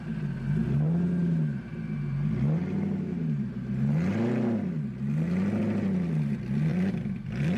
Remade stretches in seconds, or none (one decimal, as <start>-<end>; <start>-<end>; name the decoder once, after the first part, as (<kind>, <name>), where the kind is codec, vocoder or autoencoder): 6.7-7.6 (vocoder, BigVGAN v2)

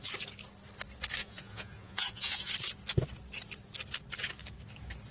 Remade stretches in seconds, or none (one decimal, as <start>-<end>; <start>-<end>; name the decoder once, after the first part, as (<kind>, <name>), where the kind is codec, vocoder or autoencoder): 1.2-2.5 (vocoder, Vocos)

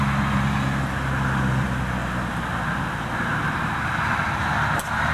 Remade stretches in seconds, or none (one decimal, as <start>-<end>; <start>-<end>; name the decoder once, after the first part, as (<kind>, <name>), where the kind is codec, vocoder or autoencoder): none

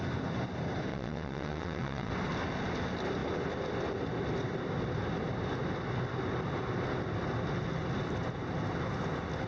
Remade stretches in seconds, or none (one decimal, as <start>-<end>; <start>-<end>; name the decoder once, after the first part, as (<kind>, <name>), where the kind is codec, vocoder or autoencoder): 0.9-2.1 (vocoder, WaveNeXt)

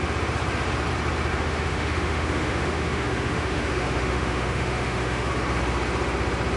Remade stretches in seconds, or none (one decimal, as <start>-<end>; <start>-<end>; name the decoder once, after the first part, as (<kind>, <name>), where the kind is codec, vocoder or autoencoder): 1.3-5.3 (autoencoder, DAC-VAE)

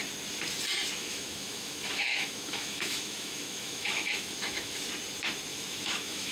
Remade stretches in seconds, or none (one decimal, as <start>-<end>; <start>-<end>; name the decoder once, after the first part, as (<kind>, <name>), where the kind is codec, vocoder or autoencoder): 1.0-4.8 (autoencoder, DAC-VAE); 5.5-6.3

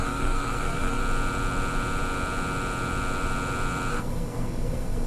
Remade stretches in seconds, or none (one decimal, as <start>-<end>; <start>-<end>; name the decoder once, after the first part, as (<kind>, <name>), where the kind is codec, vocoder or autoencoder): 0.0-1.0 (codec, SNAC); 3.9-5.1

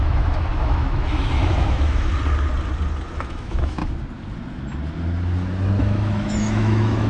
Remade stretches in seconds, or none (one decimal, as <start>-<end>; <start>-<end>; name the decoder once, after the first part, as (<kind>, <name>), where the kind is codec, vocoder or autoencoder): 0.0-2.1 (autoencoder, DAC-VAE); 3.1-3.8; 5.8-7.1